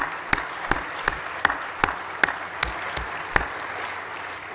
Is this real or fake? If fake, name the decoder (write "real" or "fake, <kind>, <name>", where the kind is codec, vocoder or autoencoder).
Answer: real